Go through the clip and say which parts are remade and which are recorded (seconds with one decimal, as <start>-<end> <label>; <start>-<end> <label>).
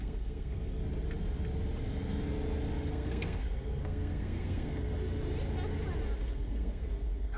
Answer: 0.0-0.8 remade; 0.8-2.9 recorded; 2.9-5.1 remade; 5.1-6.2 recorded; 6.2-7.4 remade